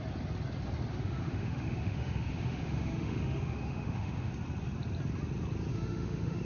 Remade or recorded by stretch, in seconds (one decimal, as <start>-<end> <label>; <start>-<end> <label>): 0.0-0.9 recorded; 0.9-4.3 remade; 4.3-5.7 recorded; 5.7-6.4 remade